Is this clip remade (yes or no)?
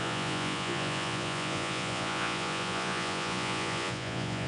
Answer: yes